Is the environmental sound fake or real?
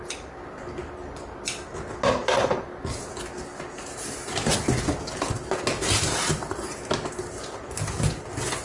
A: real